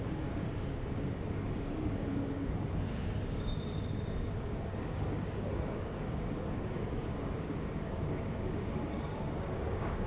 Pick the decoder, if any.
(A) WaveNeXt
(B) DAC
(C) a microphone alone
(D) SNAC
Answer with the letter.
B